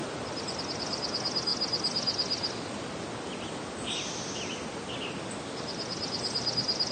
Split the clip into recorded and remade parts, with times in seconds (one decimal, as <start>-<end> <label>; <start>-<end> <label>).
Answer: 0.0-0.6 remade; 0.6-6.9 recorded